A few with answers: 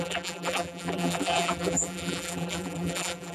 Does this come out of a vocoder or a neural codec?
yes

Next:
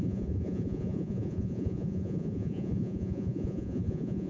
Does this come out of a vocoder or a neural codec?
yes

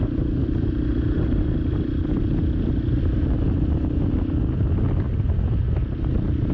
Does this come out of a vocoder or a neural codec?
no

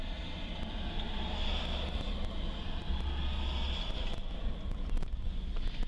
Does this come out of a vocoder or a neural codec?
no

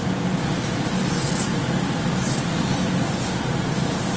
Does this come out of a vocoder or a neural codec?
no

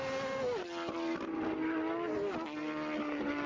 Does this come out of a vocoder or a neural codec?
no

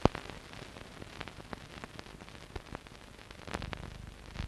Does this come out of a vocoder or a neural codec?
no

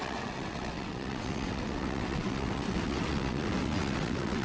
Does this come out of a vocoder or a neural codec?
yes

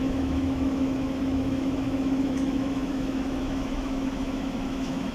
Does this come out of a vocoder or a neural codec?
yes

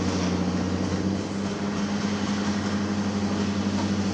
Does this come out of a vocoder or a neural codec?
no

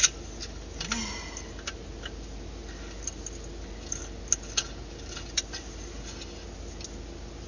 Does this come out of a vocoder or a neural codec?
no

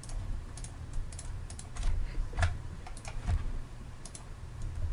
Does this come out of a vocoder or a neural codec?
yes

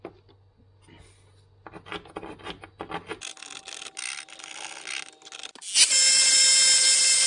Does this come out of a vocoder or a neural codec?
no